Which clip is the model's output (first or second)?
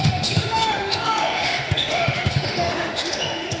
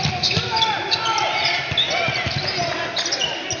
first